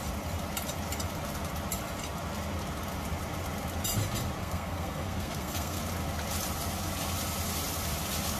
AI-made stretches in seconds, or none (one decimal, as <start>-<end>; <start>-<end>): 4.4-5.8